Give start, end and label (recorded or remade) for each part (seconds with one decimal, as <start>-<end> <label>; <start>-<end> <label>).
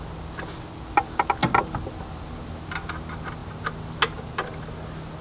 0.0-5.2 recorded